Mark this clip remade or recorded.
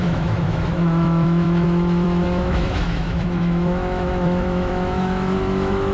remade